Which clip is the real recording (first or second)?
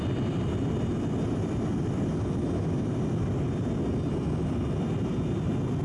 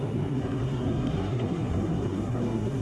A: first